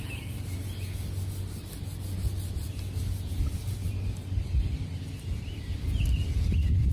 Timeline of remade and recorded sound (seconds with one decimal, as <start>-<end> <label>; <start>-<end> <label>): 0.0-3.3 recorded; 3.3-5.6 remade; 5.6-6.9 recorded